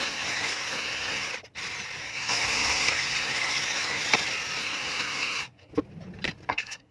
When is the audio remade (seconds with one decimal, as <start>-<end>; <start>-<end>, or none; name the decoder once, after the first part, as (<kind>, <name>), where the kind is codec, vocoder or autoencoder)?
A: 0.0-1.3 (codec, SNAC); 2.0-4.0; 4.6-5.7; 6.5-6.9